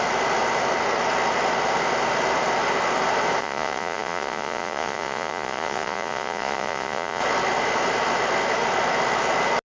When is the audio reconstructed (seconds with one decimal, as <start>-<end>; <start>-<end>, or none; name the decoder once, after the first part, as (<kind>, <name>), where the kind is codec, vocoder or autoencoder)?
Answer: 3.4-7.2 (vocoder, Vocos)